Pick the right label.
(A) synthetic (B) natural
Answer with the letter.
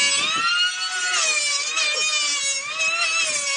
B